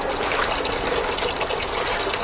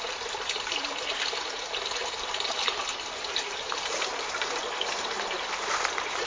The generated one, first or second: second